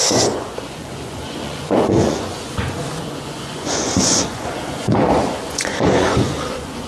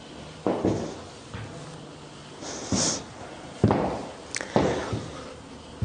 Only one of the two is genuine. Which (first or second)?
second